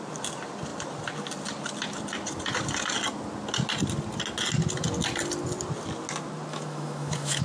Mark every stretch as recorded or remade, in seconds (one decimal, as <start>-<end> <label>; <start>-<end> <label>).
0.0-6.5 recorded; 6.5-7.4 remade